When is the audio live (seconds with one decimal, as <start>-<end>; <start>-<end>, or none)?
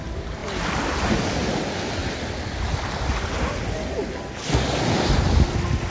0.0-5.9